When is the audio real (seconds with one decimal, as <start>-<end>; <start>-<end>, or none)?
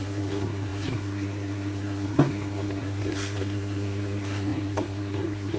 none